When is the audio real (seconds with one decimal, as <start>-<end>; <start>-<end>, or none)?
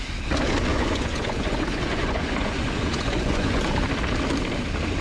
0.0-0.7; 3.7-5.0